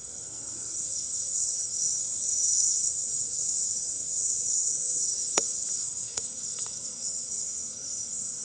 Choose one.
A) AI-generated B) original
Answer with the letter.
A